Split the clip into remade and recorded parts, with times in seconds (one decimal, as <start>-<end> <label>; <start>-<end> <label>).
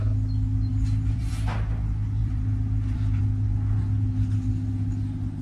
0.0-0.7 recorded; 0.7-1.3 remade; 1.3-2.2 recorded; 2.2-3.2 remade; 3.2-5.4 recorded